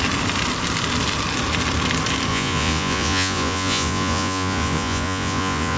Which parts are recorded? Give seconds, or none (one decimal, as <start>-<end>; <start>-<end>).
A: 0.0-2.3